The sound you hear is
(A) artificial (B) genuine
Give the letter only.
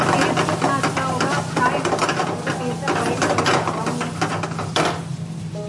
B